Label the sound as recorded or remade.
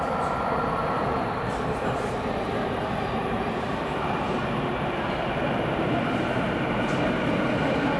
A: remade